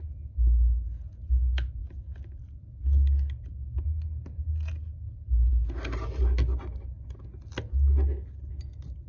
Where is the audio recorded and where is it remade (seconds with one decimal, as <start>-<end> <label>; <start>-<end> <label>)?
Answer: 0.0-9.1 recorded